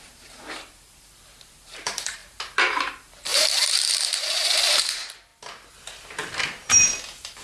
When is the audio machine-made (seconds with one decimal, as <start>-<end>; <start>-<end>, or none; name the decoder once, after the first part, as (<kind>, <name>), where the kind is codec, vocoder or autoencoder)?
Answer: 0.0-5.3 (vocoder, BigVGAN v2); 6.3-7.4